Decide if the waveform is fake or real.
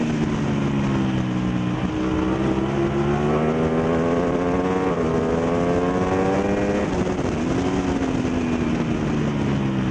real